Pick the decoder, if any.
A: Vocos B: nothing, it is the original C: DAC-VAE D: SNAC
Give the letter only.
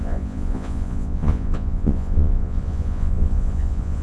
A